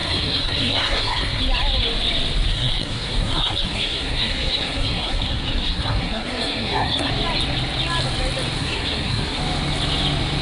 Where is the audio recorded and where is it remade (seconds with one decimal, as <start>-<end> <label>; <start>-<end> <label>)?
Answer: 0.0-1.4 remade; 1.4-2.5 recorded; 2.5-7.1 remade; 7.1-8.6 recorded; 8.6-9.4 remade; 9.4-10.4 recorded